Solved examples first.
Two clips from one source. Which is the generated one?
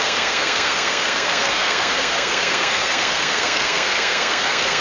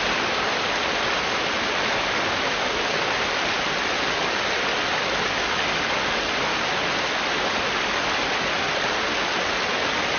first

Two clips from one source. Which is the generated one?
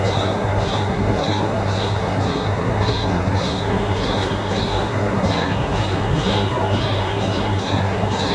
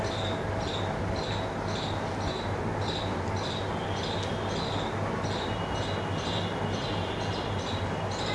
first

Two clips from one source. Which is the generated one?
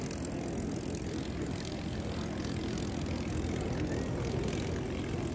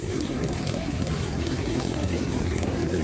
second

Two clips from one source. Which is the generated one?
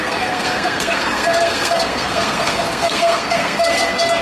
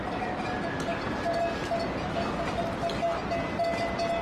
first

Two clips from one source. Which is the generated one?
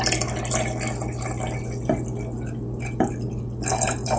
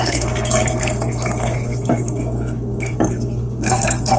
second